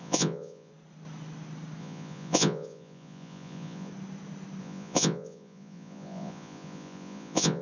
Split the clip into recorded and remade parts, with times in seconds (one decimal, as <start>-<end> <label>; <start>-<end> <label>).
0.0-0.7 remade; 0.7-1.8 recorded; 1.8-3.9 remade; 3.9-4.6 recorded; 4.6-7.6 remade